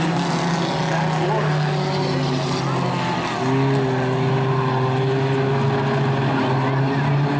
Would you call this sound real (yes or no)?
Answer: yes